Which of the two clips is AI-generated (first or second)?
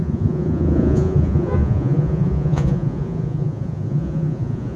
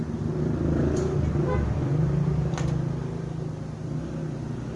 first